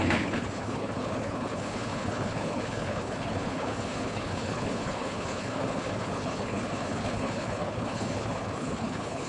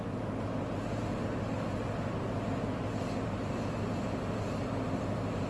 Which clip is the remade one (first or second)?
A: first